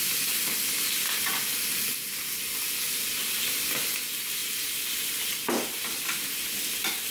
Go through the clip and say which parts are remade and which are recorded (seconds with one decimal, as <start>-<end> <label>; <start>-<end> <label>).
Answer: 0.0-7.1 recorded